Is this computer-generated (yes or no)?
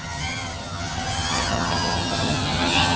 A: yes